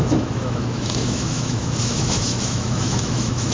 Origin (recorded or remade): remade